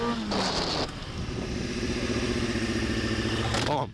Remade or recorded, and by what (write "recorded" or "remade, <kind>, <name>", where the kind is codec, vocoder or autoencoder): recorded